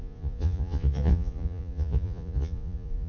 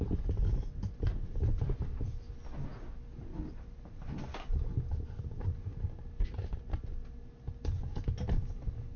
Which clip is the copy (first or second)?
first